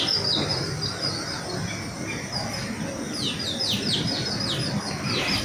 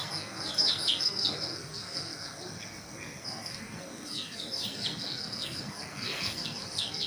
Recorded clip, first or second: first